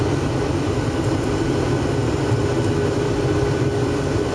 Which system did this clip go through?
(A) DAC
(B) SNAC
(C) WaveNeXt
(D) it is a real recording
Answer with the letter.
D